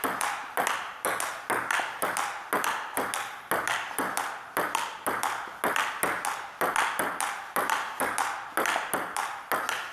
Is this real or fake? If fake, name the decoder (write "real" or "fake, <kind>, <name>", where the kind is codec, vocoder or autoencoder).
real